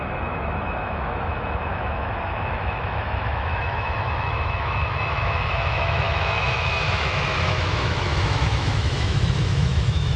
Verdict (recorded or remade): remade